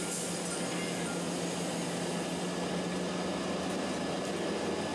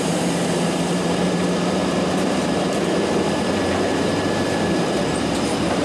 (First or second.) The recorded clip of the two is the first